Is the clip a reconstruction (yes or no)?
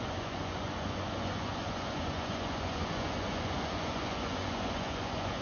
yes